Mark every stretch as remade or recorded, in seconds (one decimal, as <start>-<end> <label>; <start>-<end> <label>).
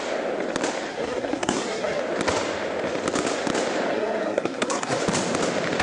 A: 0.0-0.9 recorded; 0.9-2.0 remade; 2.0-3.9 recorded; 3.9-5.0 remade; 5.0-5.8 recorded